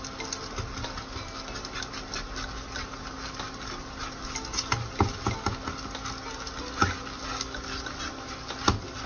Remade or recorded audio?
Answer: recorded